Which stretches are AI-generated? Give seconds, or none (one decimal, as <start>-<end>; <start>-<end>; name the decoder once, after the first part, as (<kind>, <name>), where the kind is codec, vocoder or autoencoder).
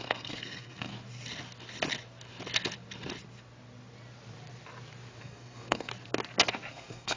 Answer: 0.0-0.9 (codec, SNAC); 5.2-5.9; 6.7-7.2